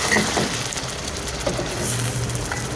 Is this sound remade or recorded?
recorded